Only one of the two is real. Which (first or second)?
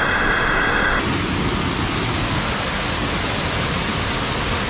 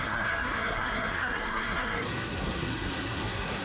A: first